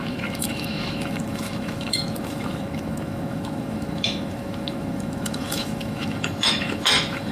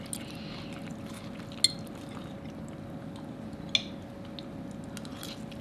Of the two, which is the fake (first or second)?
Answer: first